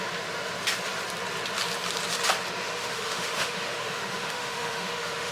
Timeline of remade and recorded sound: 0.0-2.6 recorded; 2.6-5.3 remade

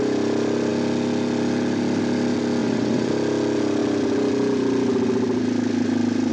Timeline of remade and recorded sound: 0.0-2.6 recorded; 2.6-3.1 remade; 3.1-6.3 recorded

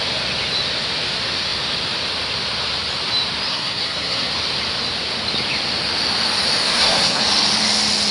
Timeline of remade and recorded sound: 0.0-3.5 recorded; 3.5-4.3 remade; 4.3-6.6 recorded; 6.6-7.2 remade; 7.2-8.1 recorded

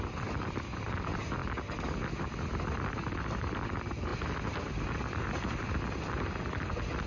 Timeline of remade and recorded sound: 0.0-7.1 recorded

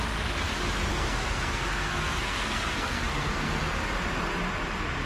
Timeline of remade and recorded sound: 0.0-0.9 recorded; 0.9-3.6 remade; 3.6-5.1 recorded

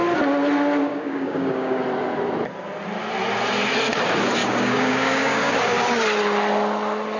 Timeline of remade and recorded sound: 0.0-0.9 recorded; 0.9-1.8 remade; 1.8-4.4 recorded; 4.4-5.5 remade; 5.5-7.2 recorded

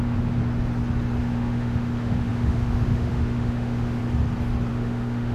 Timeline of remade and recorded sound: 0.0-0.4 remade; 0.4-1.2 recorded; 1.2-4.0 remade; 4.0-4.7 recorded; 4.7-5.3 remade

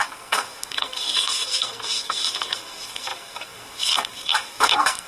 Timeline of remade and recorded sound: 0.0-5.1 remade